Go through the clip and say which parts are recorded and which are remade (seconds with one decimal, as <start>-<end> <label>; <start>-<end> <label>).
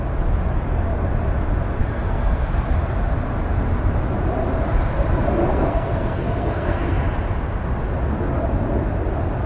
0.0-1.8 recorded; 1.8-2.5 remade; 2.5-5.4 recorded; 5.4-7.0 remade; 7.0-9.5 recorded